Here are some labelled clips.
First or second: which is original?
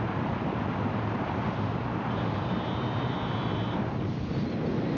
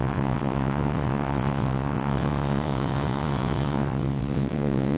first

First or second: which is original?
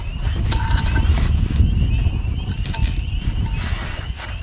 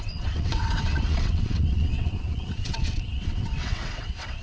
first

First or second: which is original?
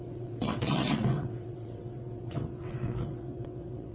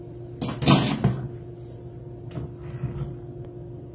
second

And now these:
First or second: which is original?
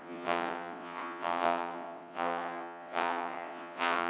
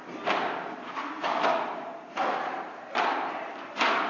second